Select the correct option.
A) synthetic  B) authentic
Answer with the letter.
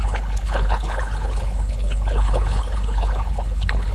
A